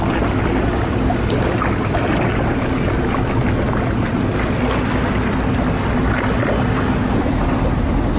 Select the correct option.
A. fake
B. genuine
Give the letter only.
B